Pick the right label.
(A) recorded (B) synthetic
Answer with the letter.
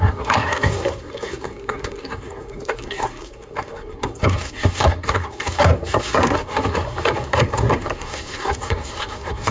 B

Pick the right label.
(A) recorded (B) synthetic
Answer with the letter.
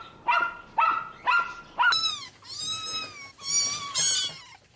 A